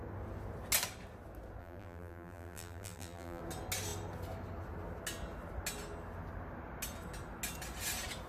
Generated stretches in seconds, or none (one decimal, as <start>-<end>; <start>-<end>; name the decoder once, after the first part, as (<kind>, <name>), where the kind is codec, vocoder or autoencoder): 1.6-3.4 (vocoder, BigVGAN v2)